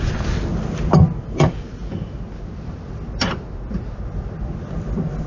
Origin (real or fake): real